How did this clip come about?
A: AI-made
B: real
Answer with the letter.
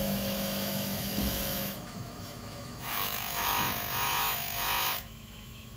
A